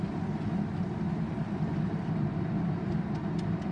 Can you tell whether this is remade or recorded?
recorded